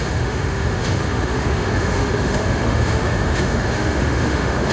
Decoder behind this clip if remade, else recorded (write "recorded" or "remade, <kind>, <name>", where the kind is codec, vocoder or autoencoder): remade, autoencoder, DAC-VAE